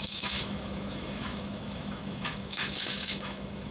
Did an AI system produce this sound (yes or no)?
yes